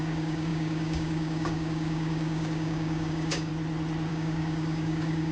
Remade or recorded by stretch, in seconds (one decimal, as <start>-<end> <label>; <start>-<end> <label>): 0.0-3.5 remade; 3.5-4.1 recorded; 4.1-5.3 remade